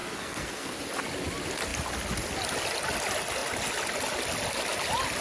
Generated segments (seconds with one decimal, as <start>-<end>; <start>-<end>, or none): 0.0-0.8